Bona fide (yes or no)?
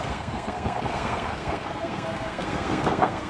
no